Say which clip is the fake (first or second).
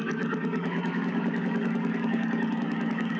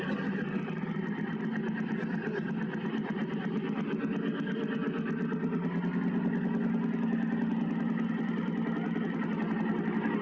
first